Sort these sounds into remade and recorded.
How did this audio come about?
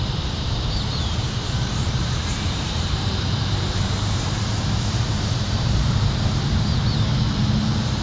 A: remade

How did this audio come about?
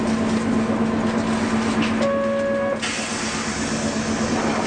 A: recorded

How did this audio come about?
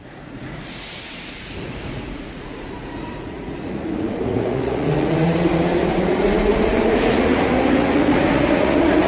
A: remade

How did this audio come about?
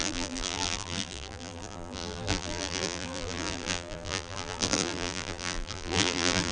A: remade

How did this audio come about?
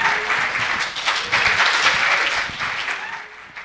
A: recorded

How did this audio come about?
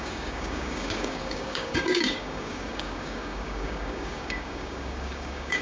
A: remade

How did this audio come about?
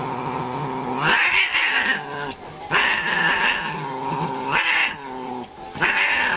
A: recorded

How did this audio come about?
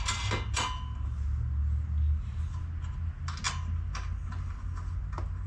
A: recorded